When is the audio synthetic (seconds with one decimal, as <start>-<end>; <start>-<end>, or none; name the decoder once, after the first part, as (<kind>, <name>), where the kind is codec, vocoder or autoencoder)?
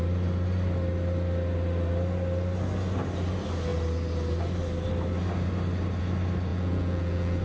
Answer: 6.5-7.4 (vocoder, Vocos)